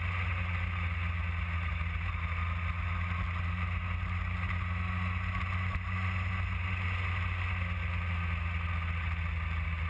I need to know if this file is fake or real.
real